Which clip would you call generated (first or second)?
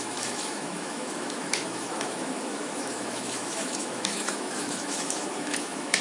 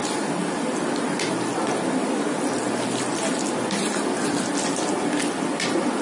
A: first